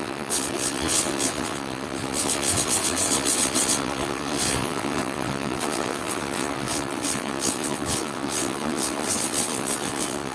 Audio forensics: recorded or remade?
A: remade